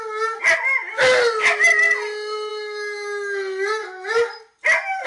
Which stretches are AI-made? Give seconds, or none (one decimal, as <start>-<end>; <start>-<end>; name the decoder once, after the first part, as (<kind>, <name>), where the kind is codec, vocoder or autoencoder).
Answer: none